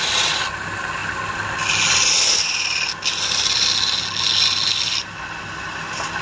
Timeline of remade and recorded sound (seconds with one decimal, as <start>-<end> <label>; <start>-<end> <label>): 0.0-6.2 recorded